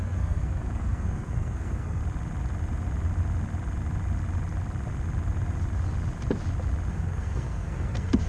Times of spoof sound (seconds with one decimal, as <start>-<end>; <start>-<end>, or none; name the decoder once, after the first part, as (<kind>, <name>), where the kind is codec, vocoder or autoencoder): 0.0-2.0 (codec, SNAC); 6.9-8.3